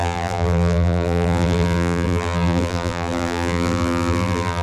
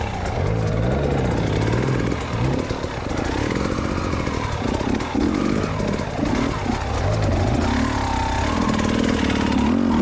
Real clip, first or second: second